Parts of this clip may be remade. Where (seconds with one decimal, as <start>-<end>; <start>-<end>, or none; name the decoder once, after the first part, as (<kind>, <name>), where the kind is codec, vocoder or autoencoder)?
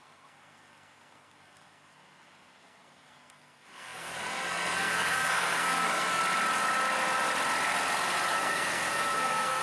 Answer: 0.0-6.2 (codec, SNAC); 8.3-9.6